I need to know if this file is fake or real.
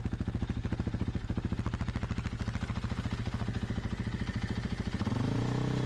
real